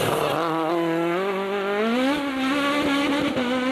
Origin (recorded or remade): recorded